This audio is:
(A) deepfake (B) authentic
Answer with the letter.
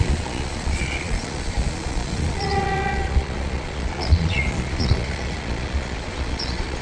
A